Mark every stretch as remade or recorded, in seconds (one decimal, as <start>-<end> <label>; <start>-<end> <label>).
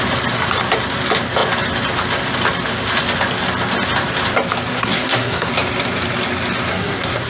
0.0-4.7 recorded; 4.7-5.5 remade; 5.5-6.7 recorded; 6.7-7.3 remade